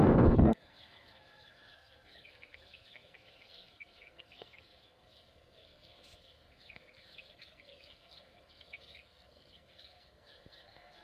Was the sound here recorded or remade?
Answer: remade